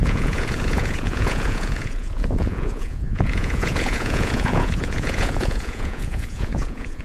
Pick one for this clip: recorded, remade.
remade